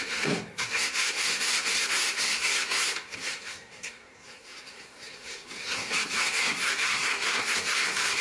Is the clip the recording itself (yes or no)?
no